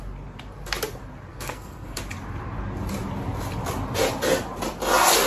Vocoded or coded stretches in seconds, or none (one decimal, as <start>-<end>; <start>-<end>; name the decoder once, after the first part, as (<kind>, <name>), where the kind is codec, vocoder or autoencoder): 1.3-2.0 (codec, SNAC)